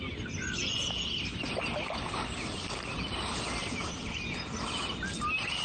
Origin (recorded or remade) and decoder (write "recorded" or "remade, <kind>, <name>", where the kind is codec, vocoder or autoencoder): recorded